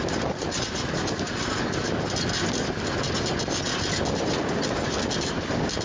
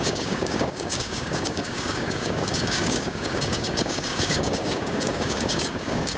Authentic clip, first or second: first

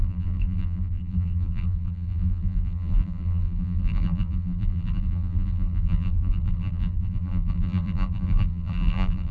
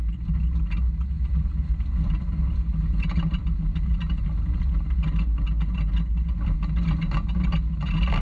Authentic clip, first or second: second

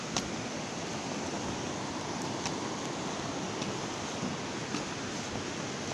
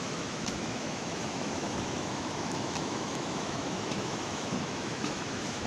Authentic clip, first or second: first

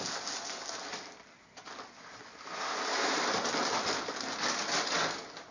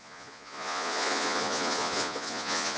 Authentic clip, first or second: first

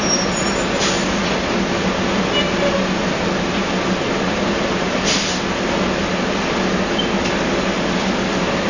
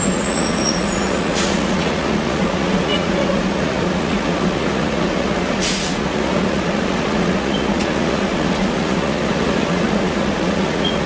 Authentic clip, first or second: first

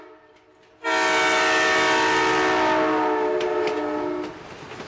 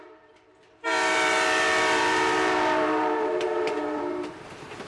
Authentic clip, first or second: first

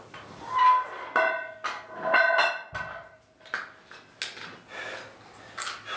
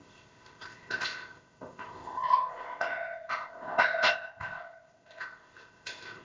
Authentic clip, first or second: first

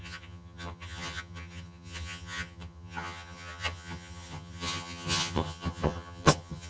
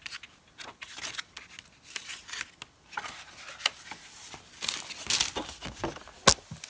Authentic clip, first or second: second